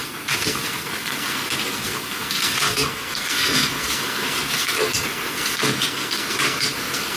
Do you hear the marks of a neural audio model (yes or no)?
yes